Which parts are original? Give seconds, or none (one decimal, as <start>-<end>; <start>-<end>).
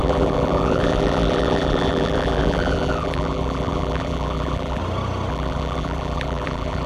4.8-5.3